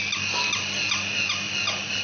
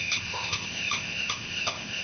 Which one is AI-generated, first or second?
second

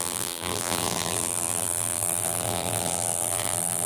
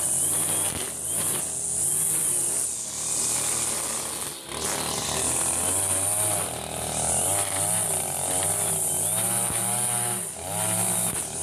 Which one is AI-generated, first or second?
first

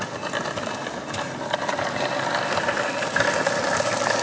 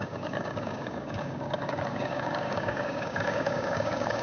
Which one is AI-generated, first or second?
second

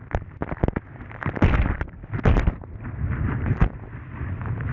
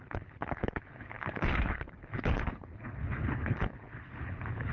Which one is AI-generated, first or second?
second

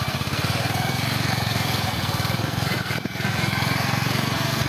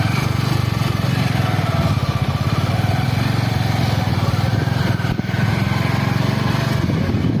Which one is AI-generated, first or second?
first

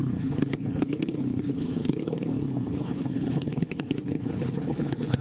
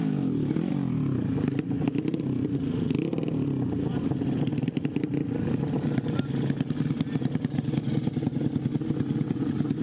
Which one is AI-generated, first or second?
first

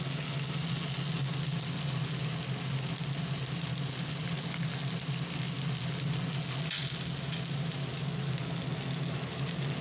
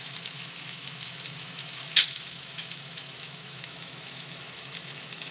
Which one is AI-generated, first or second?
second